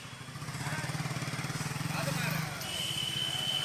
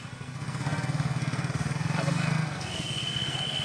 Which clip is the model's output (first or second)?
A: second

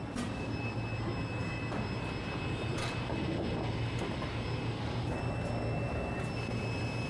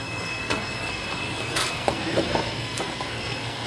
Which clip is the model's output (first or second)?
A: second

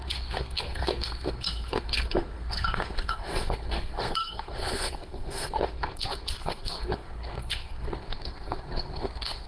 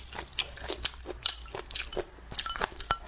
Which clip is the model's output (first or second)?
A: first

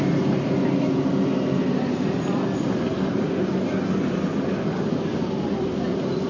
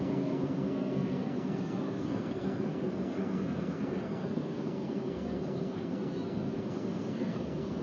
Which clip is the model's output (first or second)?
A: second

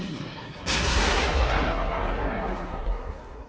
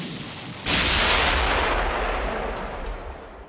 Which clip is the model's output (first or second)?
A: first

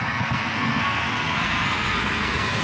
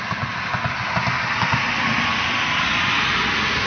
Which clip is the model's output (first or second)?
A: first